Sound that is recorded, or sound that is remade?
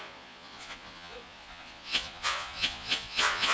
remade